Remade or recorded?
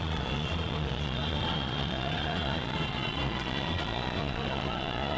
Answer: remade